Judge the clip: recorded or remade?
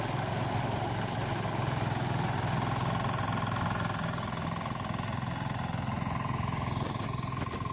recorded